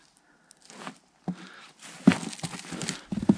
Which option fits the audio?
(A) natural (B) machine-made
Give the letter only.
A